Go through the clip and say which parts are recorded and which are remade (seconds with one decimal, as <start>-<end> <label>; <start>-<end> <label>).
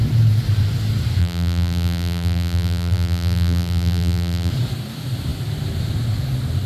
0.0-1.2 recorded; 1.2-4.5 remade; 4.5-6.7 recorded